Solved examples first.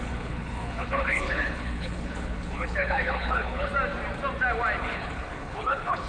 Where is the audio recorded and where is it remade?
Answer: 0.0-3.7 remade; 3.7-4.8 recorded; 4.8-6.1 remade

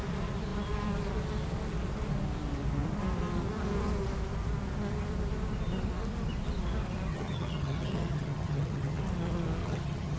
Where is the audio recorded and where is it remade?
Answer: 0.0-7.1 recorded; 7.1-9.0 remade; 9.0-9.6 recorded; 9.6-10.2 remade

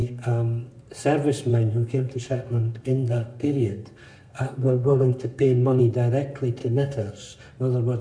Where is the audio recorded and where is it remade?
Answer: 0.0-0.7 remade; 0.7-1.5 recorded; 1.5-5.8 remade; 5.8-6.6 recorded; 6.6-7.4 remade; 7.4-8.0 recorded

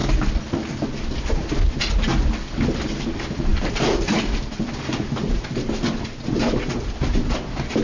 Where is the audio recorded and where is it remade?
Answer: 0.0-7.8 recorded

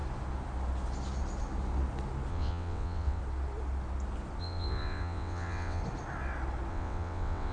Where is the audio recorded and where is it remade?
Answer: 0.0-2.3 recorded; 2.3-3.2 remade; 3.2-4.4 recorded; 4.4-5.8 remade; 5.8-6.7 recorded; 6.7-7.5 remade

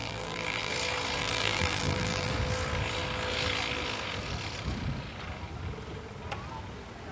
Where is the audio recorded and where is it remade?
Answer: 0.0-0.7 remade; 0.7-1.2 recorded; 1.2-2.3 remade; 2.3-7.1 recorded

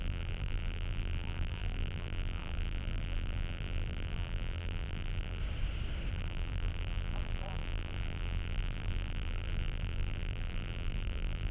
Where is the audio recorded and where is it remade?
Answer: 0.0-5.4 remade; 5.4-6.1 recorded; 6.1-11.5 remade

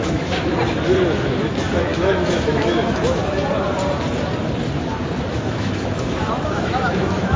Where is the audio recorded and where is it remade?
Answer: 0.0-0.5 remade; 0.5-1.4 recorded; 1.4-3.2 remade; 3.2-5.3 recorded; 5.3-7.4 remade